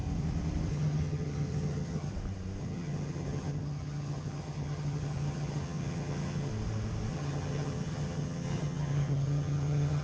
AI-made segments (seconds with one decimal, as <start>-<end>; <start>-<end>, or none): 0.7-2.1; 2.6-6.5; 7.1-10.0